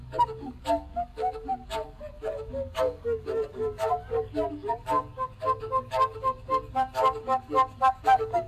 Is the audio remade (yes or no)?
yes